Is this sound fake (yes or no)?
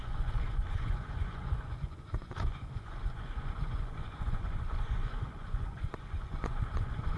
yes